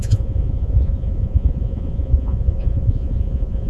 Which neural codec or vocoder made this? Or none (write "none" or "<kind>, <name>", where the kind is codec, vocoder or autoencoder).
vocoder, Vocos